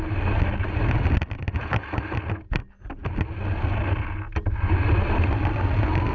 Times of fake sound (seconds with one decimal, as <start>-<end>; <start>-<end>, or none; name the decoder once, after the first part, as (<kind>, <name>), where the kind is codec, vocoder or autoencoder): none

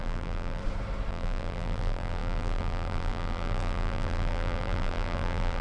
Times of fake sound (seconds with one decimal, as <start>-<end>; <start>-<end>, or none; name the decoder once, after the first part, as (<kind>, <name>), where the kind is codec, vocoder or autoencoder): 0.0-0.6 (vocoder, BigVGAN v2); 1.1-5.6

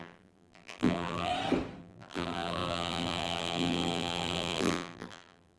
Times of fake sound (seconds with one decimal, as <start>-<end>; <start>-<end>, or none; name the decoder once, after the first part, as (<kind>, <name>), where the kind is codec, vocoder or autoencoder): 0.0-1.3 (vocoder, BigVGAN v2); 1.8-5.6

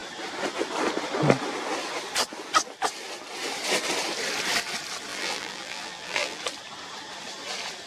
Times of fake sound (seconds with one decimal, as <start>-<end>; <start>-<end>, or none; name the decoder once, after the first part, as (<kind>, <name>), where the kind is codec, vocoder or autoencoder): 5.1-6.4 (vocoder, BigVGAN v2)

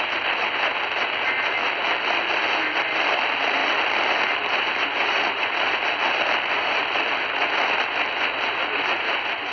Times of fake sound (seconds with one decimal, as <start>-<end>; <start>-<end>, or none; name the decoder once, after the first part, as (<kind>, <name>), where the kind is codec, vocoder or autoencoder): 3.6-7.8 (vocoder, BigVGAN v2)

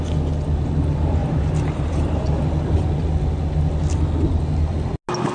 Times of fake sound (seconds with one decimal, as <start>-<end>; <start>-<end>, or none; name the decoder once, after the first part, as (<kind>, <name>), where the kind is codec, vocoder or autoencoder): 1.2-2.4 (vocoder, BigVGAN v2)

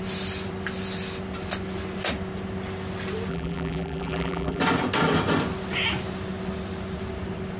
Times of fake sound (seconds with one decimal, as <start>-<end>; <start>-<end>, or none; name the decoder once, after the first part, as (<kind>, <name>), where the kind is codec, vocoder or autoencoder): 3.3-4.6 (vocoder, BigVGAN v2)

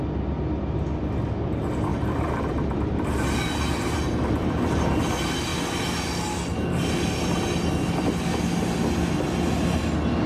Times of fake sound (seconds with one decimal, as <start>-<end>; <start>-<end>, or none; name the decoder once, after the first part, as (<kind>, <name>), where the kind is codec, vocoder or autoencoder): 1.9-5.0 (vocoder, BigVGAN v2)